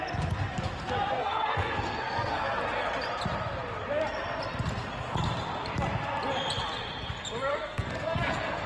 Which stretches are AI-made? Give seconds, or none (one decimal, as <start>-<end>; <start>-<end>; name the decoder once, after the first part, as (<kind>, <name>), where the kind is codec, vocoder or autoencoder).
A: 1.2-2.6 (codec, SNAC); 7.5-8.7